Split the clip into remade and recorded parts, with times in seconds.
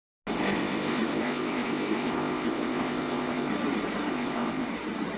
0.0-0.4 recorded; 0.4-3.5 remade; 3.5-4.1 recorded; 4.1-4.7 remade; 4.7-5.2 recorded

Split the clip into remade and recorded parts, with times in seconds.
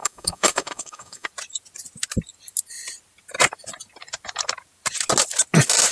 0.0-1.3 remade; 1.3-5.9 recorded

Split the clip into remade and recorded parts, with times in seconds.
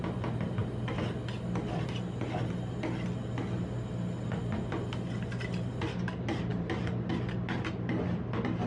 0.0-6.5 recorded; 6.5-7.1 remade; 7.1-8.7 recorded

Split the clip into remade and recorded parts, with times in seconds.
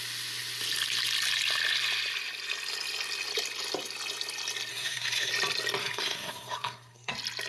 0.0-4.7 recorded; 4.7-5.3 remade; 5.3-5.8 recorded; 5.8-7.1 remade; 7.1-7.5 recorded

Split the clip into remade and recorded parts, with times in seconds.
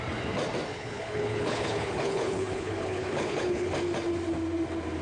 0.0-0.7 recorded; 0.7-3.7 remade; 3.7-5.0 recorded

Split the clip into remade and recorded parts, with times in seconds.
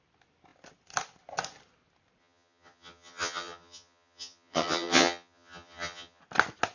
0.0-2.2 recorded; 2.2-6.2 remade; 6.2-6.7 recorded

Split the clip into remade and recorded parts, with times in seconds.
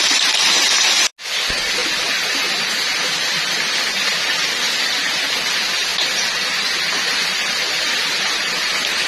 0.0-9.1 recorded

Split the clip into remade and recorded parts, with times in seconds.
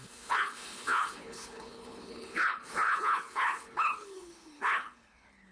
0.0-5.5 remade